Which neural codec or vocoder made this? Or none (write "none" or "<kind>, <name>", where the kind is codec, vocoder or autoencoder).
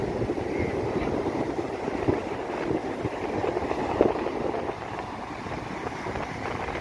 none